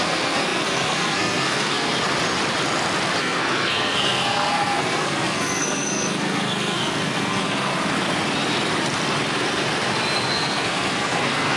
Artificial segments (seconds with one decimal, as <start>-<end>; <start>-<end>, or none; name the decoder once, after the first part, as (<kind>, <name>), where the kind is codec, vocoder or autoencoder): 0.0-1.9 (codec, SNAC); 3.2-7.7; 10.3-11.6

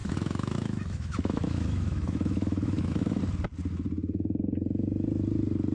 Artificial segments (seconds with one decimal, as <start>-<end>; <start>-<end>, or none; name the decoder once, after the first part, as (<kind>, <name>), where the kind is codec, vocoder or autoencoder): 0.0-3.2 (autoencoder, DAC-VAE)